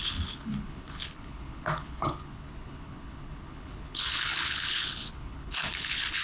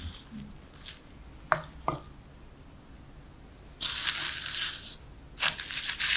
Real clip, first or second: second